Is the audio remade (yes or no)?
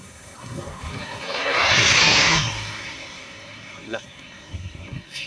yes